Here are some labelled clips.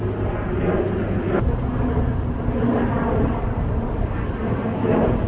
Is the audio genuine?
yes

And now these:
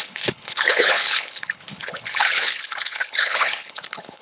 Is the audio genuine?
no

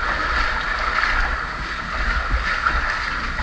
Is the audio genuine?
yes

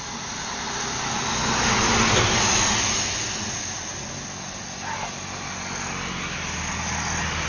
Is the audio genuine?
yes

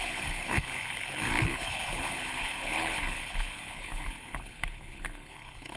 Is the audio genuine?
no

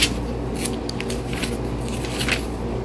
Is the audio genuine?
yes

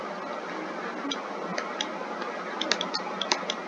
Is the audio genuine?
yes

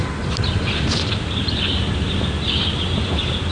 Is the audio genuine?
yes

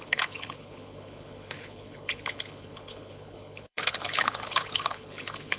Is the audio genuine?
no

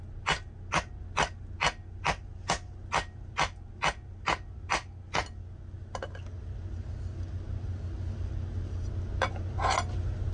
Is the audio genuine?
yes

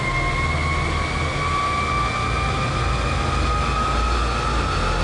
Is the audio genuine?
yes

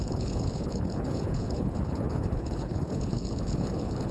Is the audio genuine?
no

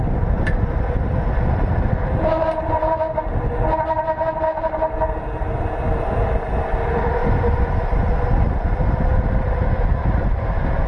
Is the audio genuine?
yes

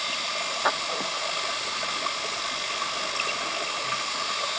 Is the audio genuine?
yes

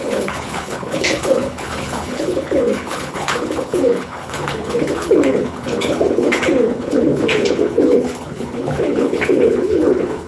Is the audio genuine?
no